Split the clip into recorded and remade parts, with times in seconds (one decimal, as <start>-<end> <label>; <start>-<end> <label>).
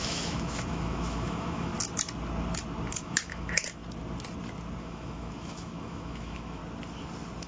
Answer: 0.0-1.7 remade; 1.7-3.0 recorded; 3.0-3.8 remade; 3.8-4.8 recorded; 4.8-6.6 remade; 6.6-7.5 recorded